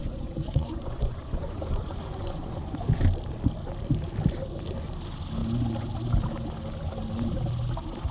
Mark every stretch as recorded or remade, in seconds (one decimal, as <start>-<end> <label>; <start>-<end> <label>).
0.0-3.0 remade; 3.0-8.1 recorded